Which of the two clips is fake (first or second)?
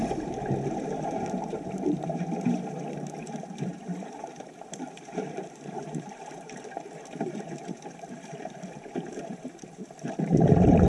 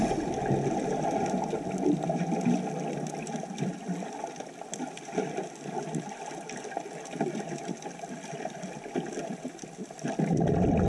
first